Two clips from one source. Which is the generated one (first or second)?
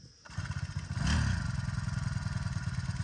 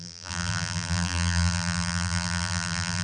second